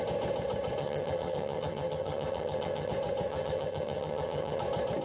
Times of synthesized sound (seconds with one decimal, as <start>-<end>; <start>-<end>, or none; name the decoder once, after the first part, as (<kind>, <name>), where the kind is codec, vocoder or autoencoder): 0.8-2.9 (vocoder, HiFi-GAN); 3.3-4.6